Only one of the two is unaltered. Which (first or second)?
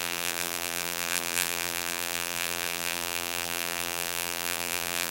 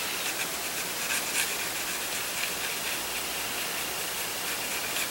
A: second